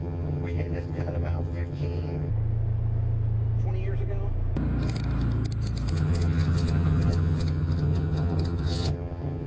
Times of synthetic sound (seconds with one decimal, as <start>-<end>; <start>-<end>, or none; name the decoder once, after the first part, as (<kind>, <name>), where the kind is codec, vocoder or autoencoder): 0.0-2.3 (vocoder, HiFi-GAN); 5.9-9.5